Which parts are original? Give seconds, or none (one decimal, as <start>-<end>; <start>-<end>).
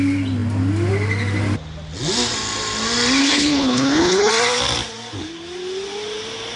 0.0-3.2; 4.3-6.6